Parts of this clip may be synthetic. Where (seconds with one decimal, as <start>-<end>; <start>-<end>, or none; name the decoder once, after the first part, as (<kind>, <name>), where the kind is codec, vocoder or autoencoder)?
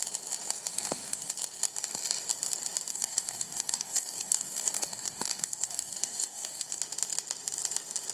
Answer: 0.7-1.3 (codec, DAC); 2.9-6.8